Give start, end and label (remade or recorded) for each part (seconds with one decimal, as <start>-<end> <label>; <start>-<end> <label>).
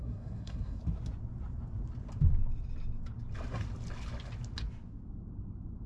0.0-0.8 remade; 0.8-5.9 recorded